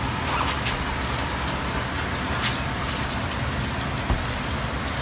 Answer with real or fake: real